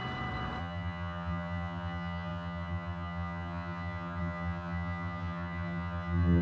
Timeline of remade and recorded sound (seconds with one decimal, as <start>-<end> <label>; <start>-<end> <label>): 0.0-0.6 recorded; 0.6-6.4 remade